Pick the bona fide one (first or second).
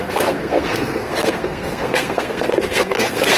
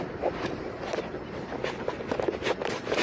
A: second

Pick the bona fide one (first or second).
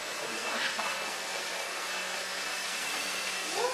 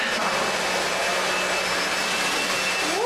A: second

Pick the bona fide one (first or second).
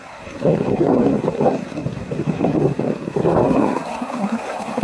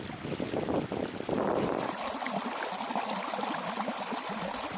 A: second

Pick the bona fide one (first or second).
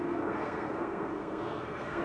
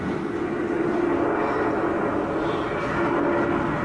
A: second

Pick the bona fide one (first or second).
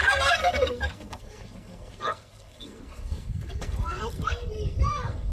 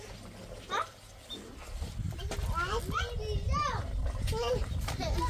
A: second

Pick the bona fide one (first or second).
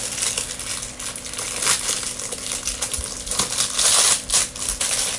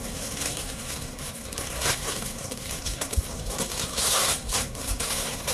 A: first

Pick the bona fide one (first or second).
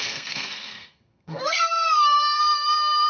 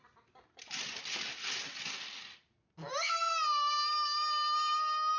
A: second